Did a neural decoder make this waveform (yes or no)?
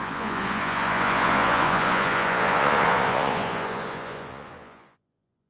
yes